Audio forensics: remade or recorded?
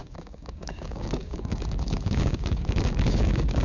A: remade